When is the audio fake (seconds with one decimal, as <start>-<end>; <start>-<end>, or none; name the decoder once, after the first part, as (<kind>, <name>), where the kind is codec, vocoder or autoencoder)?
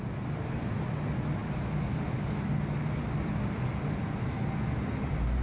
none